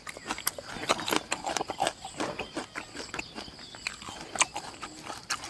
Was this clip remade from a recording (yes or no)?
no